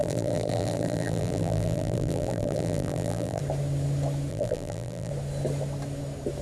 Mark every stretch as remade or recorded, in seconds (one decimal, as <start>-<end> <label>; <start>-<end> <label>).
0.0-3.4 remade; 3.4-4.3 recorded; 4.3-5.1 remade; 5.1-6.4 recorded

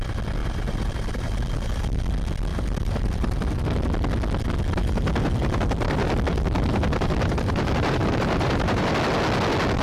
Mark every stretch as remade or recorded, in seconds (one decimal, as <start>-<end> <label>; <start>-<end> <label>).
0.0-0.4 recorded; 0.4-2.0 remade; 2.0-2.5 recorded; 2.5-3.6 remade; 3.6-4.8 recorded; 4.8-8.9 remade; 8.9-9.8 recorded